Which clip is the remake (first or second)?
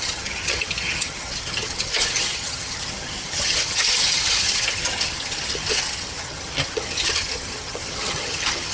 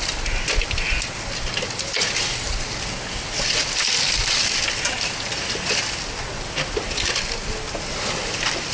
first